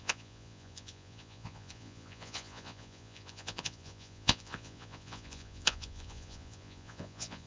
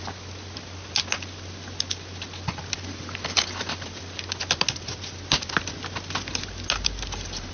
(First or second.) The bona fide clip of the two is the second